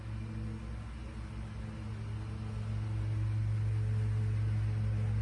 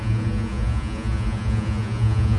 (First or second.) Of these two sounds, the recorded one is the first